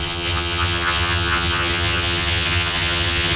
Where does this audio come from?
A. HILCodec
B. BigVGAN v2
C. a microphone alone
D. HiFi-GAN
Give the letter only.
D